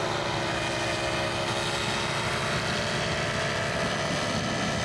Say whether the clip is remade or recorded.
recorded